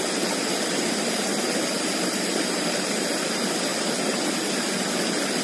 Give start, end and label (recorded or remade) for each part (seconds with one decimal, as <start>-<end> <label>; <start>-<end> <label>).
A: 0.0-0.4 recorded; 0.4-3.1 remade; 3.1-5.4 recorded